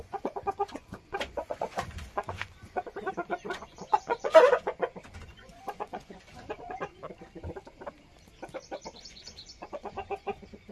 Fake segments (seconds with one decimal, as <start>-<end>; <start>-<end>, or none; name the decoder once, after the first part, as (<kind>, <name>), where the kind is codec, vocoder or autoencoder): 0.0-7.0 (vocoder, Vocos); 9.0-10.7